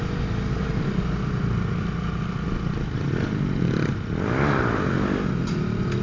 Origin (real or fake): real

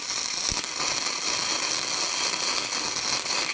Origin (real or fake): real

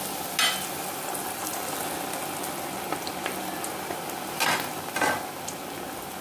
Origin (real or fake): real